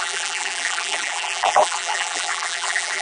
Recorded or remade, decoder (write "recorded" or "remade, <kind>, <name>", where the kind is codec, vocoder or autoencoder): remade, vocoder, BigVGAN v2